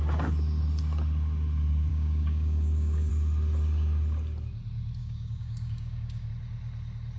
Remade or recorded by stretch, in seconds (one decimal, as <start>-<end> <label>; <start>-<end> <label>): 0.0-1.9 recorded; 1.9-3.1 remade; 3.1-5.0 recorded; 5.0-6.3 remade; 6.3-7.2 recorded